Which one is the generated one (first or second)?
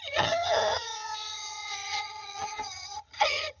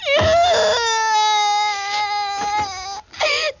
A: first